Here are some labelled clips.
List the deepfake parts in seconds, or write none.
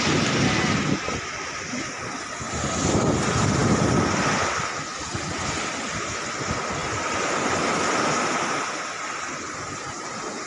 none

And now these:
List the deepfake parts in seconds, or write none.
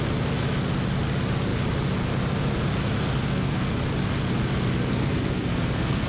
3.2-3.7 (codec, SNAC); 4.8-6.1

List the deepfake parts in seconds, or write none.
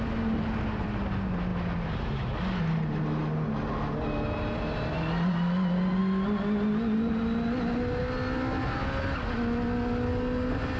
none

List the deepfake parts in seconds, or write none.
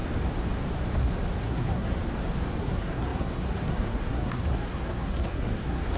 1.4-2.0 (codec, SNAC); 2.6-6.0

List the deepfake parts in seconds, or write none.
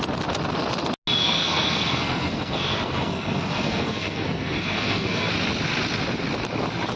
1.2-5.3 (codec, SNAC)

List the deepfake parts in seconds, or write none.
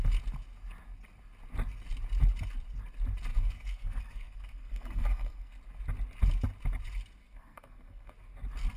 3.3-5.6 (codec, SNAC); 7.2-8.1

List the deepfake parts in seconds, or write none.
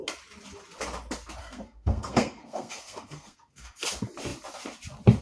1.4-3.9 (codec, SNAC)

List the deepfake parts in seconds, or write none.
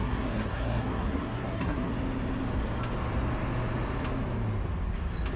0.0-1.9 (codec, SNAC)